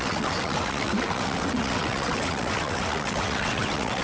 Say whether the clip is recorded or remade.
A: remade